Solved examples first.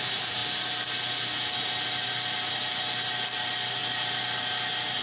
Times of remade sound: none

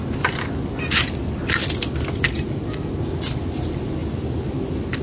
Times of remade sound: none

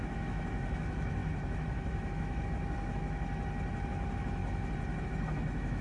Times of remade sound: 0.0-3.3 (autoencoder, DAC-VAE); 3.9-4.4; 5.0-5.8

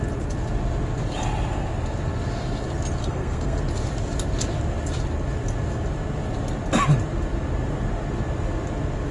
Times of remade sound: 3.0-3.6 (codec, SNAC)

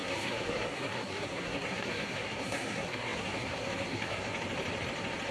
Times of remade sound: 0.0-4.3 (codec, SNAC)